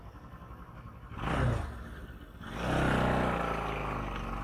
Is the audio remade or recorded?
recorded